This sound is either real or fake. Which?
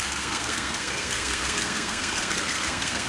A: fake